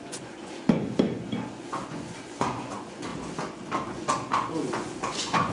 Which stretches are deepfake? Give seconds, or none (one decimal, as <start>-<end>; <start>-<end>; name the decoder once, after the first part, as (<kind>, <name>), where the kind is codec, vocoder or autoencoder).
0.0-3.1 (vocoder, Vocos); 3.9-5.5